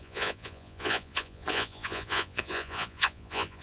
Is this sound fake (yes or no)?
yes